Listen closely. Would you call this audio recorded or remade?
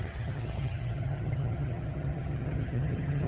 remade